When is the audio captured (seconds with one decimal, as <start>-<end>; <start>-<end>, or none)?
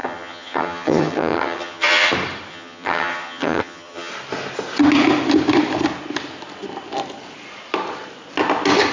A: 2.1-2.5; 4.1-8.9